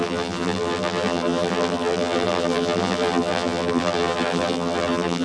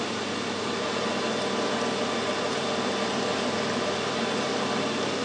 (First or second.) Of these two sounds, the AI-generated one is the first